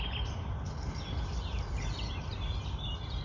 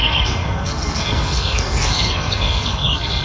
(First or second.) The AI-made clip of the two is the second